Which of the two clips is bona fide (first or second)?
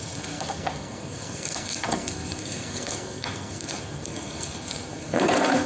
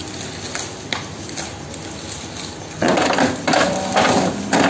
second